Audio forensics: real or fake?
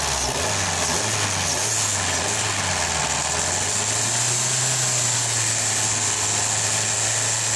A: real